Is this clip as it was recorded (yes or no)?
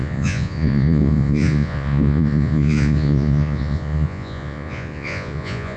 no